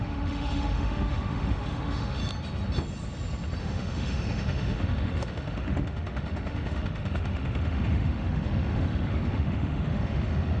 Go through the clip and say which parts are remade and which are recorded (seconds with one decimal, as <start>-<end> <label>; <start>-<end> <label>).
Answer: 0.0-2.2 remade; 2.2-3.6 recorded; 3.6-10.6 remade